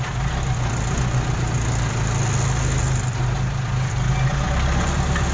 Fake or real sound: real